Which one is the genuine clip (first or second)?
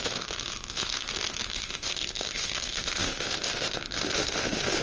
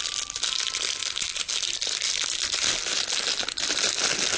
second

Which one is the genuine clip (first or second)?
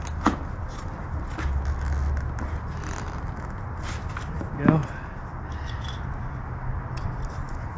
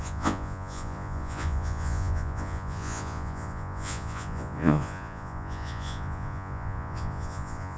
first